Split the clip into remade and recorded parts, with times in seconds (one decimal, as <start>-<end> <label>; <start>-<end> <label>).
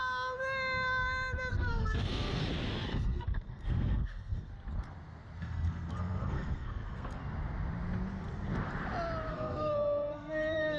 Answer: 0.0-1.5 recorded; 1.5-2.4 remade; 2.4-2.9 recorded; 2.9-4.5 remade; 4.5-5.4 recorded; 5.4-7.2 remade; 7.2-9.3 recorded; 9.3-10.8 remade